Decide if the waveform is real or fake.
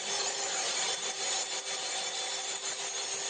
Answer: real